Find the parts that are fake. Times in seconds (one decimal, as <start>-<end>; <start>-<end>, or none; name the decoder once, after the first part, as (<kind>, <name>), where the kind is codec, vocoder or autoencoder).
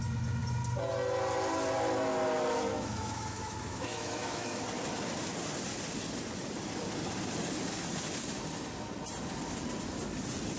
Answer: 2.7-4.6 (autoencoder, DAC-VAE)